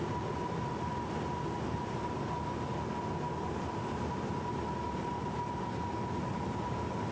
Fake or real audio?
real